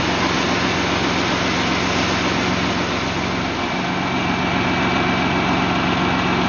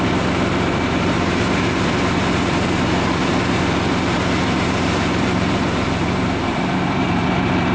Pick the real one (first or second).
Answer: first